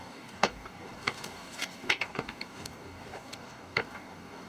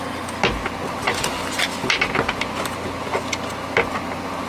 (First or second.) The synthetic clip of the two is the first